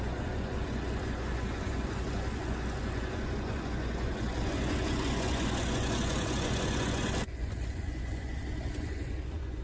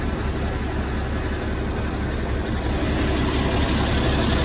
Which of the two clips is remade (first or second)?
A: first